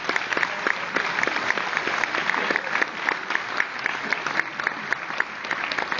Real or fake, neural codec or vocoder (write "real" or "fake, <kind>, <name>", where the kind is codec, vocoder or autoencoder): real